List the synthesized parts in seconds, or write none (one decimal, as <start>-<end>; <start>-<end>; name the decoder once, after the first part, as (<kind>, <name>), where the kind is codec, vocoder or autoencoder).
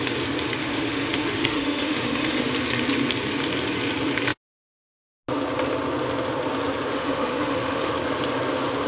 0.6-2.5 (autoencoder, DAC-VAE); 6.9-7.9